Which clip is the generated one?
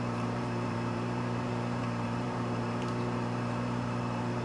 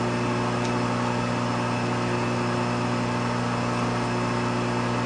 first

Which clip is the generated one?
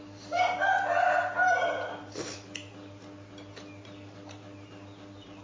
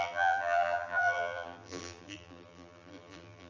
second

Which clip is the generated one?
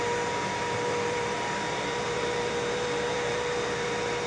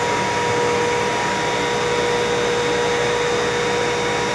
first